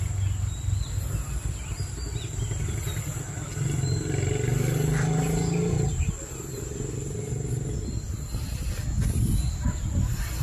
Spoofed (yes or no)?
no